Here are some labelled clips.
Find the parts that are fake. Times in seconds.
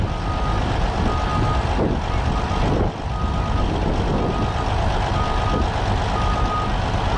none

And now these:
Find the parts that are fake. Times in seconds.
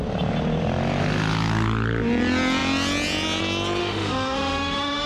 3.8-5.1 (autoencoder, DAC-VAE)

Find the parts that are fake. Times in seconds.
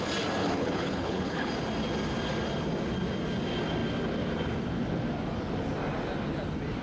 0.4-1.5 (codec, HILCodec)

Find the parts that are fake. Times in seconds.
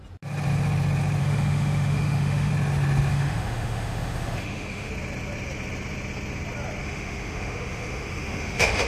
1.2-2.5 (autoencoder, DAC-VAE); 3.1-4.9; 6.8-8.9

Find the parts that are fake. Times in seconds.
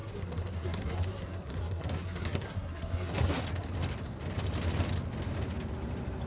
0.0-3.4 (codec, SNAC)